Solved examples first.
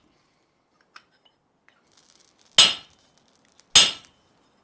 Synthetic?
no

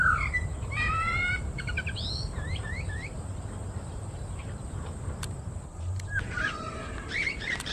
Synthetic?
yes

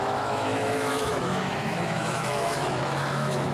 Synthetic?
yes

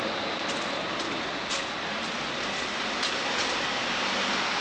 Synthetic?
no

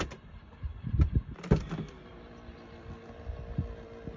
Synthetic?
no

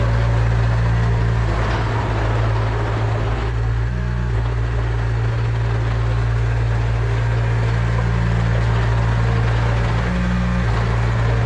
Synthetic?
no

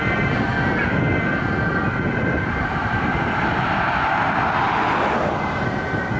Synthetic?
no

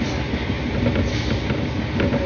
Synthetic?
no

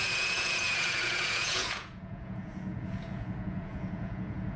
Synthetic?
yes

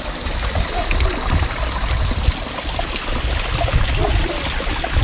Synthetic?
no